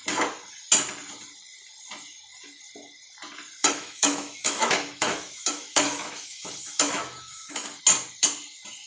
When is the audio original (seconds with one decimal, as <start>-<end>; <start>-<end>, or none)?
0.0-3.6; 7.8-8.9

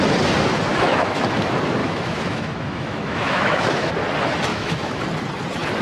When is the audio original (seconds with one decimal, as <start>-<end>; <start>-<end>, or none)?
0.0-0.7; 1.2-1.8; 3.9-4.5; 5.0-5.8

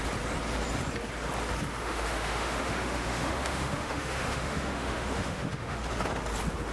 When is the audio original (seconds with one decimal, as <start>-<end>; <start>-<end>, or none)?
0.0-1.8; 5.8-6.7

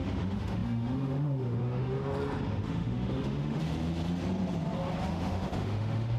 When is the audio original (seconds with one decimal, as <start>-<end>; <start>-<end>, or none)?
2.0-2.5; 3.6-5.1

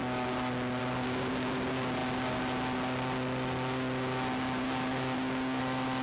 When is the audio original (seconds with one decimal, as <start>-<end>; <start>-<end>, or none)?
0.0-6.0